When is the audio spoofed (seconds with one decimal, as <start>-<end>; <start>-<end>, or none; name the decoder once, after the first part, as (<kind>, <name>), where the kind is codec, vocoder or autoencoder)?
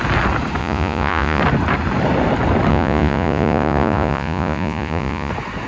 0.6-1.4 (vocoder, Vocos); 2.7-5.3